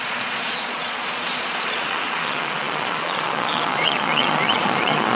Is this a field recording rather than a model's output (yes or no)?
no